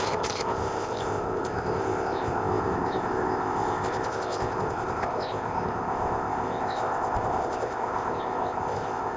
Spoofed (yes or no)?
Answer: yes